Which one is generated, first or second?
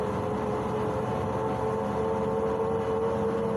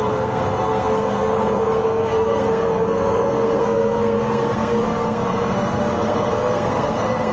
second